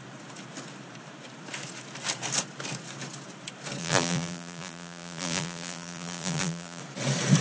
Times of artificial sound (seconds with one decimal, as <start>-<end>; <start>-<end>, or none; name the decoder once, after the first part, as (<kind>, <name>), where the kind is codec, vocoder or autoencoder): 3.8-6.8 (vocoder, BigVGAN v2)